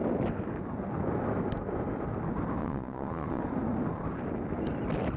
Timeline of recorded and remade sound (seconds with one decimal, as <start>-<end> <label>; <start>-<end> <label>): 0.0-2.6 recorded; 2.6-3.4 remade; 3.4-5.2 recorded